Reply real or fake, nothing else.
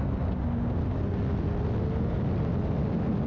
real